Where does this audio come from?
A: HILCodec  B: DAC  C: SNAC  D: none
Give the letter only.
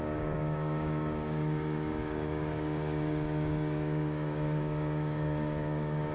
B